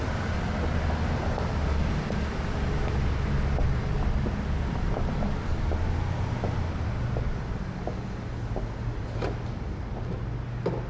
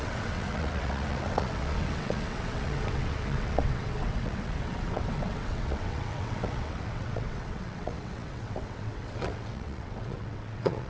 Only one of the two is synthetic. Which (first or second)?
second